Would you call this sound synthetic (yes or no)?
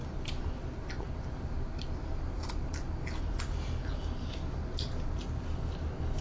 no